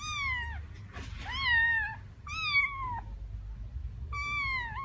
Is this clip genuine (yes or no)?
yes